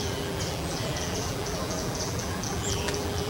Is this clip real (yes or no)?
no